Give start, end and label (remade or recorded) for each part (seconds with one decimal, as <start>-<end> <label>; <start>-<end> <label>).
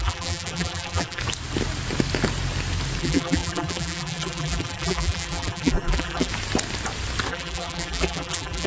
0.0-1.2 remade; 1.2-3.0 recorded; 3.0-6.3 remade; 6.3-7.3 recorded; 7.3-8.7 remade